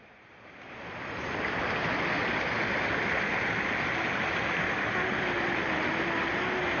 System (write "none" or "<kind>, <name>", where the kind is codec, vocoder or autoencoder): none